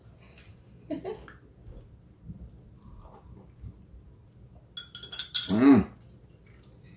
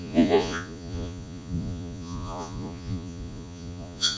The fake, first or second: second